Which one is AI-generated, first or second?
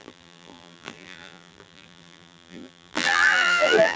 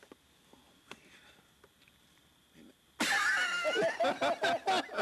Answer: first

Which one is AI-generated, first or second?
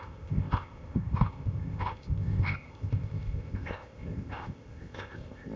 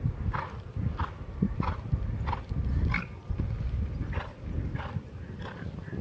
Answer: first